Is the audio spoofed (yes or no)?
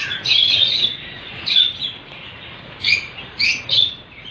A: yes